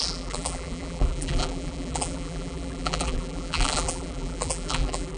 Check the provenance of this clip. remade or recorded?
remade